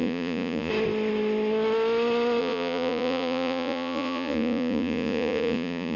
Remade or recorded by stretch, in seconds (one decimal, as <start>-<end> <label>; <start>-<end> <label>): 0.0-0.7 remade; 0.7-2.4 recorded; 2.4-6.0 remade